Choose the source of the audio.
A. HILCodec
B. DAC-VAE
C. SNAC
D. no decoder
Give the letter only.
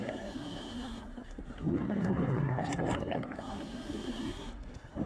C